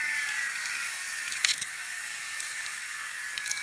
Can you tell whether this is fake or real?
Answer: fake